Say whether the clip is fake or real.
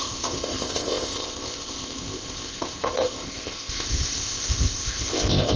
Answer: fake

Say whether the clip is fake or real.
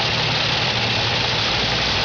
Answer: real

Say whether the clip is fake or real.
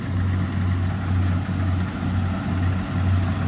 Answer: real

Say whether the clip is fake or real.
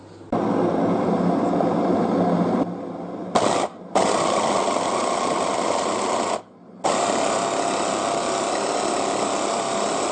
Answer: real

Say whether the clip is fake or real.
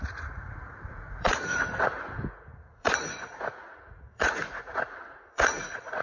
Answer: fake